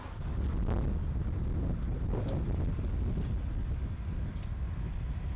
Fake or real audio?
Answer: real